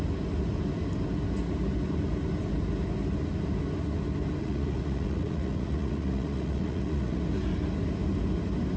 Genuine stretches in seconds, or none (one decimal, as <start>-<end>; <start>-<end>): 0.0-4.4; 7.2-8.8